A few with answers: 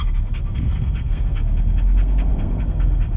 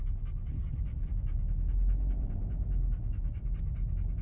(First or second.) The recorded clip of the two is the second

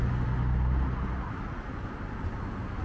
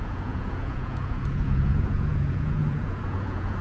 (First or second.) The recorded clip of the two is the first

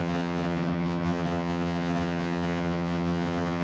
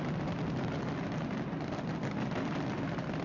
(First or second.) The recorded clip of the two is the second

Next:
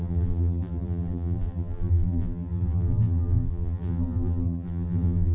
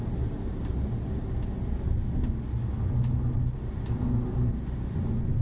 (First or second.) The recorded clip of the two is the second